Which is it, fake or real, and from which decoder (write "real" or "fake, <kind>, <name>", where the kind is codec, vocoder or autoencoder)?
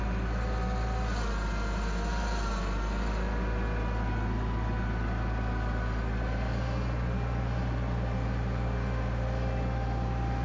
real